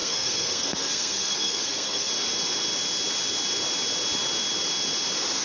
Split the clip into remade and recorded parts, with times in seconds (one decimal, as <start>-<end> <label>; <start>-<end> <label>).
0.0-2.1 remade; 2.1-5.4 recorded